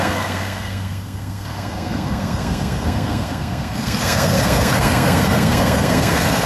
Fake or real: fake